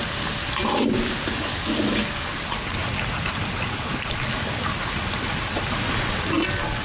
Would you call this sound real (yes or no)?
yes